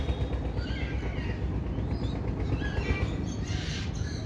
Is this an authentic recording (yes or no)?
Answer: yes